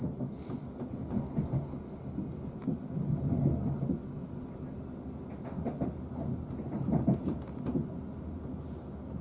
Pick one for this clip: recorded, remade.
recorded